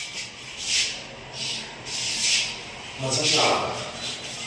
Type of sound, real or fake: real